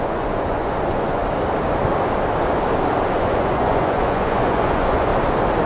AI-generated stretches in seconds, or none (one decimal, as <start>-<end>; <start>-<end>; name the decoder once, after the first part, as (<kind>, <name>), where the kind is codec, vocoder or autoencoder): 0.0-1.2 (vocoder, Vocos); 3.1-5.1